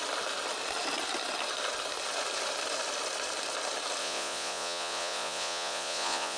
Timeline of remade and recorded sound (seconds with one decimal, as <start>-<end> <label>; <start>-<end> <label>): 0.0-4.0 recorded; 4.0-6.4 remade

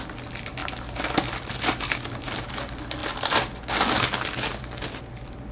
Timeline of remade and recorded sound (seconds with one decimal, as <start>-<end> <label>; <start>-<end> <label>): 0.0-5.5 recorded

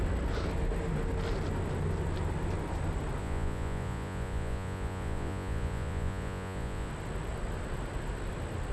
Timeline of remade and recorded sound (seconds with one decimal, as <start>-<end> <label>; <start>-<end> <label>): 0.0-3.2 recorded; 3.2-6.9 remade; 6.9-8.7 recorded

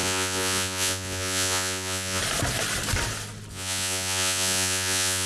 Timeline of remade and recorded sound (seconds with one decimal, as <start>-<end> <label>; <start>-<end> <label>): 0.0-2.2 remade; 2.2-3.5 recorded; 3.5-5.3 remade